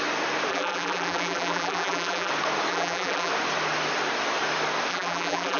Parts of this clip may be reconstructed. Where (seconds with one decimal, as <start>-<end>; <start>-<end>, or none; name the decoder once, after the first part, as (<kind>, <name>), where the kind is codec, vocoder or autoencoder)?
0.5-2.3 (vocoder, BigVGAN v2); 2.7-3.3; 4.9-5.6